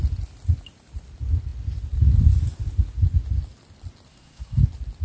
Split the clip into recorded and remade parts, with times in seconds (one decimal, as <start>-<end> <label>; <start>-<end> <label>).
0.0-4.1 recorded; 4.1-4.6 remade; 4.6-5.0 recorded